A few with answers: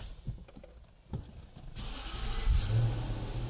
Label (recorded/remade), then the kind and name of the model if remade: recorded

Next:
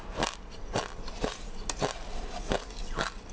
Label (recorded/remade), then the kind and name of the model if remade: recorded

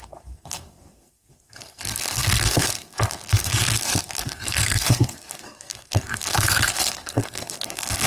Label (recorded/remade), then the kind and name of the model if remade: remade, codec, SNAC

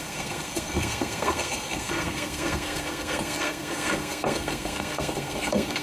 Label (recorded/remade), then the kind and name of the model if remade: remade, codec, SNAC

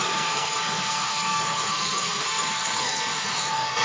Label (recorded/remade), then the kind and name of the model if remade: remade, codec, SNAC